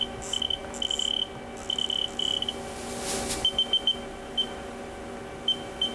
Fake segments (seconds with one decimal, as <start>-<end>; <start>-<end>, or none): none